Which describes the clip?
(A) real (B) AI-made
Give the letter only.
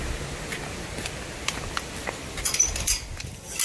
A